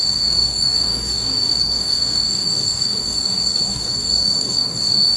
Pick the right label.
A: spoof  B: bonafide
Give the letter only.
A